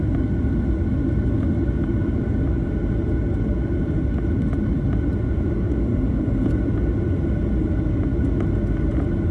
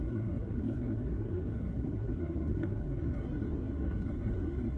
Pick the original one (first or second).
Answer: first